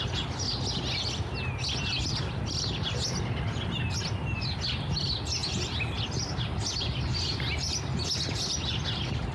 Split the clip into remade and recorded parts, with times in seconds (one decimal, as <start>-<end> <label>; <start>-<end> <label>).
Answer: 0.0-9.3 recorded